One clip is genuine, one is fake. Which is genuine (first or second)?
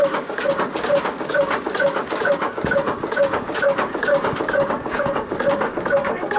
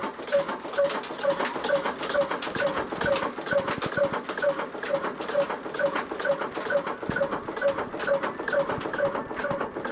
second